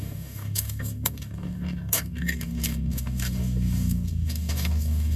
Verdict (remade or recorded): remade